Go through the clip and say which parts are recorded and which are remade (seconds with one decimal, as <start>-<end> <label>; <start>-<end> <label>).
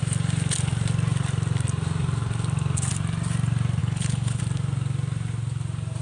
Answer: 0.0-3.8 recorded; 3.8-4.4 remade; 4.4-6.0 recorded